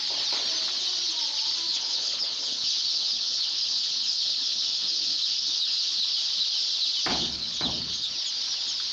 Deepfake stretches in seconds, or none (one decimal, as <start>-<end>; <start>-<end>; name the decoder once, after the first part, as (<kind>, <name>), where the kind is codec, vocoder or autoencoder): 1.7-5.9 (codec, HILCodec); 7.1-8.1